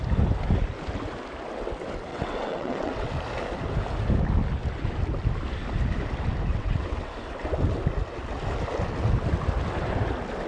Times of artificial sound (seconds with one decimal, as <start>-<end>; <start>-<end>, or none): 2.1-3.1; 6.5-7.1